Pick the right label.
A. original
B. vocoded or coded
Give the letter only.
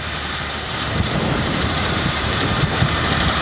B